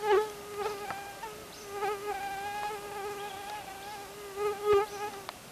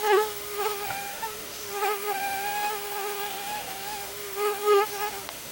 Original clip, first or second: first